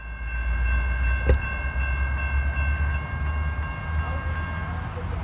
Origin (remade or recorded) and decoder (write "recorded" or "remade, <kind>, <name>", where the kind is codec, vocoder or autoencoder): recorded